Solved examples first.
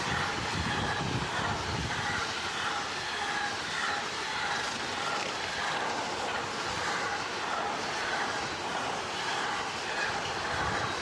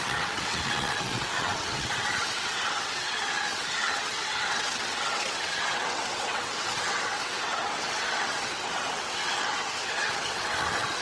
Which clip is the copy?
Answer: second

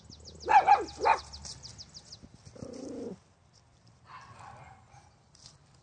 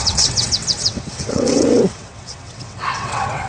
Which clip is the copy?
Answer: second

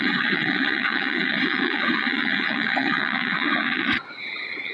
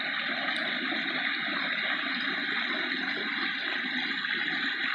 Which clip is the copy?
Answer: first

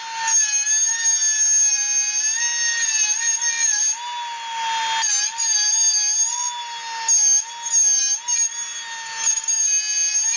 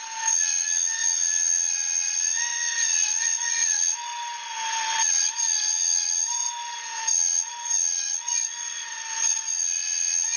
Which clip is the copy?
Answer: second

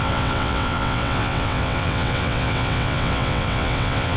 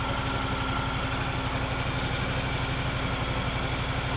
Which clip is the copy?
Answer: first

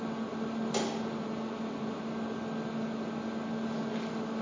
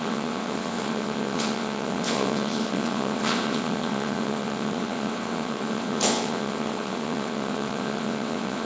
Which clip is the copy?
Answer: second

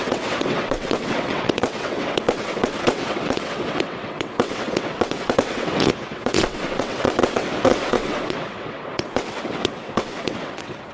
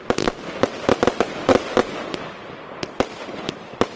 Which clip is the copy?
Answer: first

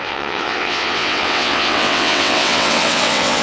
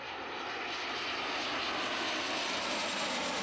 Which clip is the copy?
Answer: first